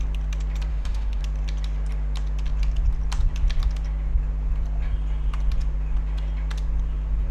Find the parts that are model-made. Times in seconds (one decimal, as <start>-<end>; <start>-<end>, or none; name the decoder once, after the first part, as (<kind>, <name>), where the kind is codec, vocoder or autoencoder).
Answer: 0.7-1.2 (autoencoder, DAC-VAE)

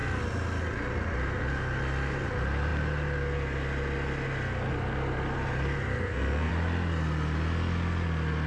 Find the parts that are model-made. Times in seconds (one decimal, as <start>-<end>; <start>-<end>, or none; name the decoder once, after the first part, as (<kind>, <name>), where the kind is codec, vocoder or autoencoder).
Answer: 5.9-6.5 (codec, SNAC)

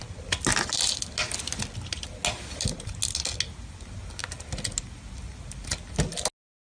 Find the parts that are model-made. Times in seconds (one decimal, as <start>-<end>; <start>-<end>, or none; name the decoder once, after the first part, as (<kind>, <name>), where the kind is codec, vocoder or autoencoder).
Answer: none

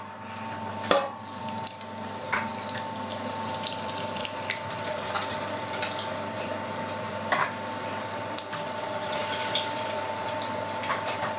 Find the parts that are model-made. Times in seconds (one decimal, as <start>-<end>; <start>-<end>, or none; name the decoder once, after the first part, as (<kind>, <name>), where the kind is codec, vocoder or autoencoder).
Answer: 0.0-2.5 (vocoder, BigVGAN v2); 3.7-11.4